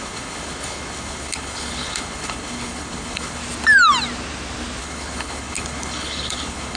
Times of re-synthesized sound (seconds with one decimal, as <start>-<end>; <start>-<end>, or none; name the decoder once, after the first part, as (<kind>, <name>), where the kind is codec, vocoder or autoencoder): 0.0-3.4 (codec, HILCodec); 4.8-6.8